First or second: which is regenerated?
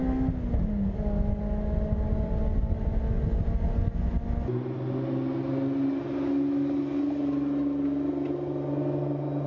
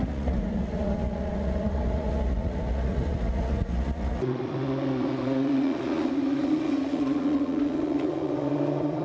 second